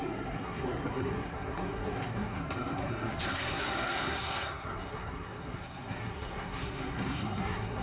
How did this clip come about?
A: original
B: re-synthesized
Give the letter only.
B